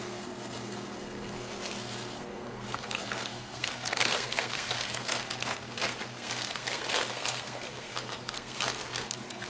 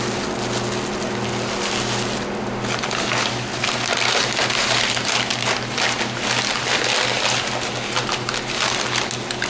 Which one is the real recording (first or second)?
second